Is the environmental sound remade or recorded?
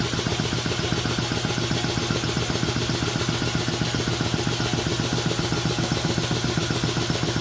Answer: recorded